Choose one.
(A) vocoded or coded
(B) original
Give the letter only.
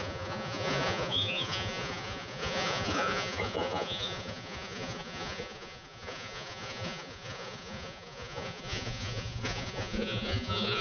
A